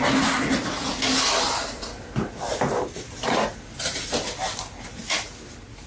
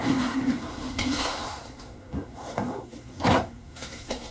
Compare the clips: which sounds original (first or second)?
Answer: first